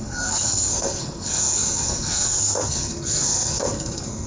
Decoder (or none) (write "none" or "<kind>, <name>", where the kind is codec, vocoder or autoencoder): codec, SNAC